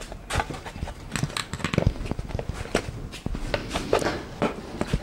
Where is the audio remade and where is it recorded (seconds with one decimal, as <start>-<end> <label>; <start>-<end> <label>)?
0.0-5.0 recorded